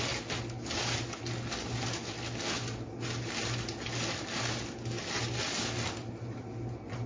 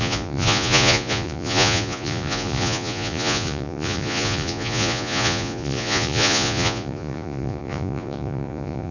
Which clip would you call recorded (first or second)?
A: first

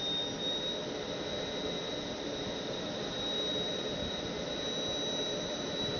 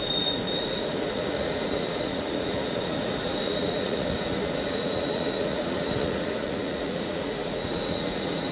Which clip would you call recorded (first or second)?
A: first